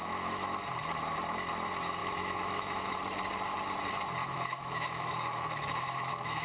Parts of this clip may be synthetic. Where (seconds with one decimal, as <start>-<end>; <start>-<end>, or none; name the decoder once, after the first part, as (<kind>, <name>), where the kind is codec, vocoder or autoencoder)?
0.0-0.6 (autoencoder, DAC-VAE); 2.0-3.0; 4.2-6.4